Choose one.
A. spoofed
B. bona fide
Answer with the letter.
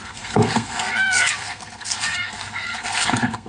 A